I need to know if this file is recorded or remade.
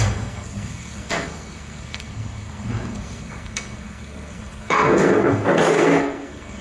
remade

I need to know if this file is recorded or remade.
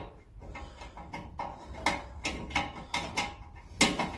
recorded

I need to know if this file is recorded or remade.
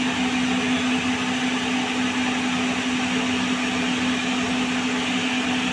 recorded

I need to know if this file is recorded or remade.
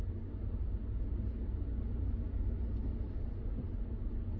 recorded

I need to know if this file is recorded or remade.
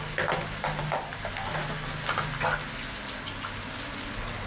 recorded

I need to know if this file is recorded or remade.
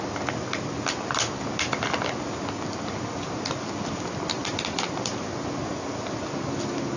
recorded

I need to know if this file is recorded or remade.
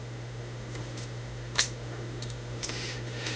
remade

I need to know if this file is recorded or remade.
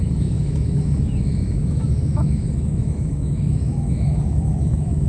remade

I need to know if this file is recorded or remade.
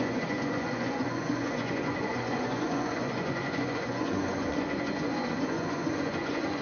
remade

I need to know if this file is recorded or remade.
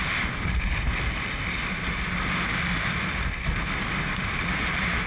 recorded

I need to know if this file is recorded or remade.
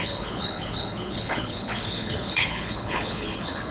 remade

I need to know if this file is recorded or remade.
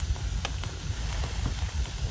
recorded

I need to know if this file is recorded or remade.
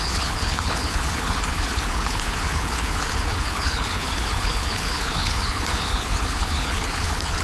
remade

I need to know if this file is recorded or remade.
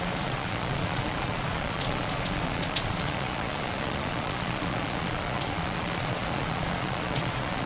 remade